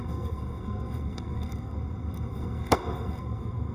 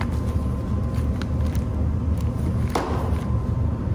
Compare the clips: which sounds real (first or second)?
second